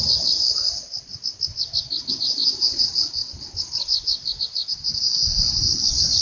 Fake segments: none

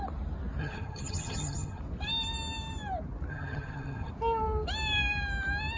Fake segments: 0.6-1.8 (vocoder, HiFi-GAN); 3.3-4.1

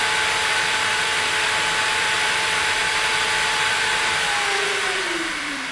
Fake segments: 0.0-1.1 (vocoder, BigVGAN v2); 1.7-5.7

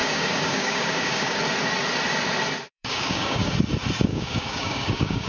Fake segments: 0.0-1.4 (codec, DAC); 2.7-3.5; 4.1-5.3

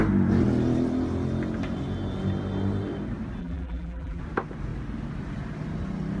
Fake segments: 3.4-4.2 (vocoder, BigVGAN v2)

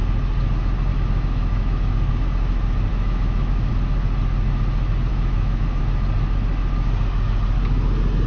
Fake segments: 0.9-2.1 (autoencoder, DAC-VAE); 2.9-3.7; 5.1-5.8